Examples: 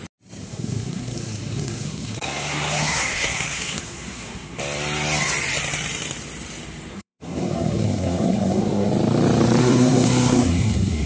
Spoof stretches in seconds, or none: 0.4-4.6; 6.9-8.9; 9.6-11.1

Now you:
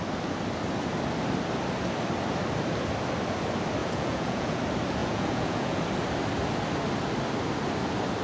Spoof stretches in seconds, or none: 3.8-4.6; 5.0-5.8

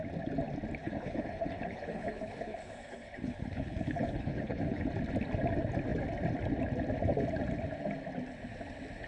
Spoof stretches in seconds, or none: 0.8-4.8

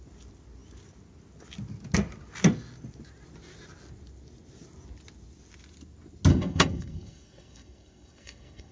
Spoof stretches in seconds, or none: 6.3-8.7